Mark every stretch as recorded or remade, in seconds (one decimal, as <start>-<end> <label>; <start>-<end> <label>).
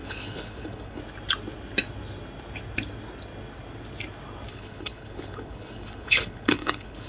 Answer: 0.0-1.0 remade; 1.0-4.5 recorded; 4.5-7.1 remade